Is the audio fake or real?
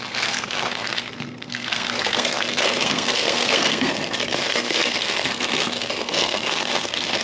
fake